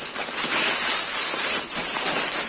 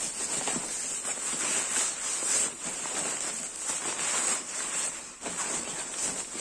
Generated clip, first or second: second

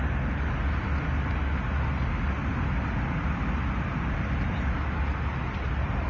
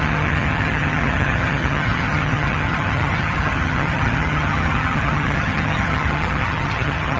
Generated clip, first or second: second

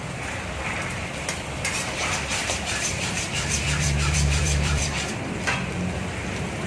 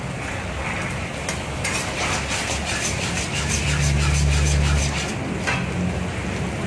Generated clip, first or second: first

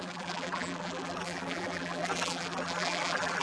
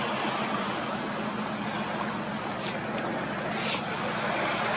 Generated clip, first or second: first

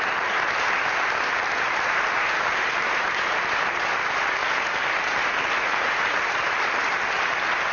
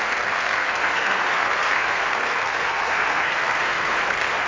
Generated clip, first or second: second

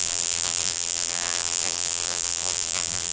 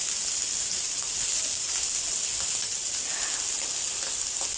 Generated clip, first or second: first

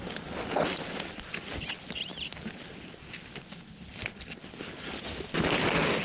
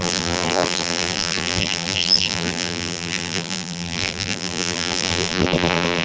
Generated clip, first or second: second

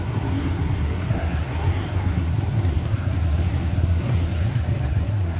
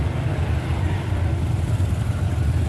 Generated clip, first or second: first